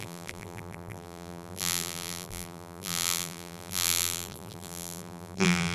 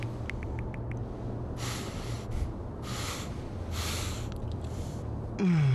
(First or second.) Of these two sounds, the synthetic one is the first